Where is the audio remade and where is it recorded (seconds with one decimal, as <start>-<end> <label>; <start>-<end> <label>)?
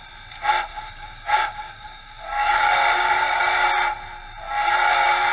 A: 0.0-0.7 recorded; 0.7-3.4 remade; 3.4-5.3 recorded